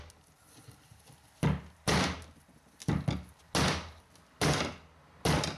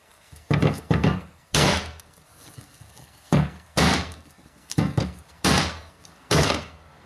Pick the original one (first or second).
first